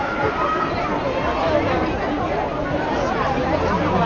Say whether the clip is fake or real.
real